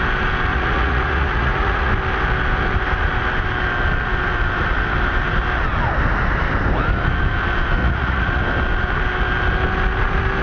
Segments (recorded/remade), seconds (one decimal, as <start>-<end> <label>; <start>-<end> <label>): 0.0-0.5 recorded; 0.5-1.9 remade; 1.9-7.8 recorded; 7.8-8.4 remade; 8.4-10.4 recorded